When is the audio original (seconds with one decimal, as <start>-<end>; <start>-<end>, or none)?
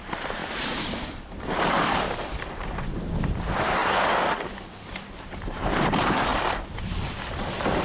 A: 3.8-4.7; 6.3-6.9